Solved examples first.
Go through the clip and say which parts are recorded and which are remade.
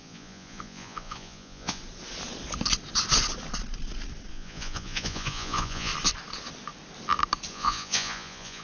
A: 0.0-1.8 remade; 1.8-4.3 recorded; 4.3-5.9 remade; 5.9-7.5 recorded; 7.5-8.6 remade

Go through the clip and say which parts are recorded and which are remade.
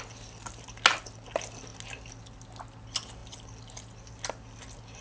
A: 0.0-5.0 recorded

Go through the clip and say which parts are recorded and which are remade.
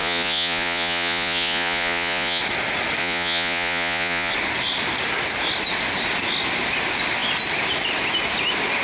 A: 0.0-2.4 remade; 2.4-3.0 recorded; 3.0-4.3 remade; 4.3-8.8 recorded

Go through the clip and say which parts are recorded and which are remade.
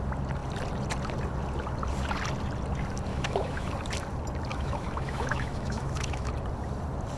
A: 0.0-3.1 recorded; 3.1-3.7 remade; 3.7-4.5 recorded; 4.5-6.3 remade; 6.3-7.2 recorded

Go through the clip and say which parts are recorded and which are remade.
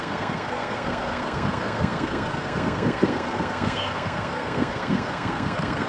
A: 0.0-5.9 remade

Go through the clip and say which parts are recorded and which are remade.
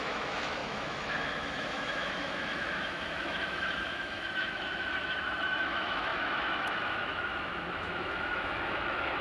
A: 0.0-9.2 remade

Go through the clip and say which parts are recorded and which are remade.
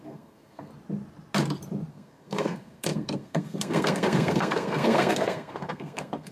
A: 0.0-0.7 remade; 0.7-1.9 recorded; 1.9-6.3 remade